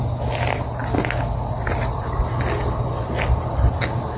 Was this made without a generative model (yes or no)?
yes